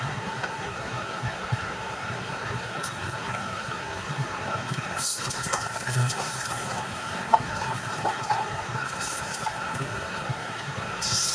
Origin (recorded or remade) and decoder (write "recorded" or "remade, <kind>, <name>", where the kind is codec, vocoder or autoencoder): remade, codec, SNAC